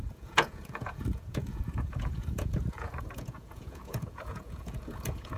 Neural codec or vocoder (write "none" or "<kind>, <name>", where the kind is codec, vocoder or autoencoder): vocoder, Vocos